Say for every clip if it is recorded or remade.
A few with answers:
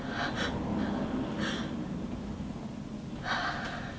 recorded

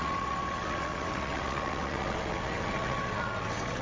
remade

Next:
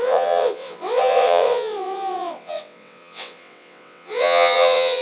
remade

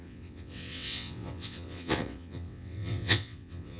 remade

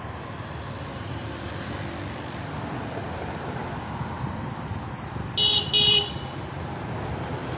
recorded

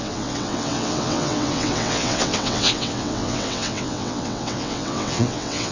remade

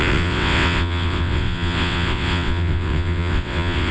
remade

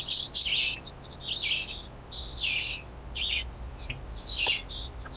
recorded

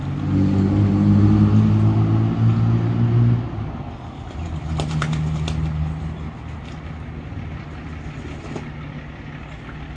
recorded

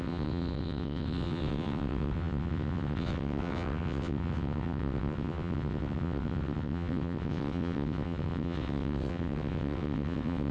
remade